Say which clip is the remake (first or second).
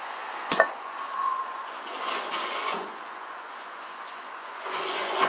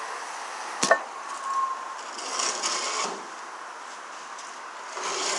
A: first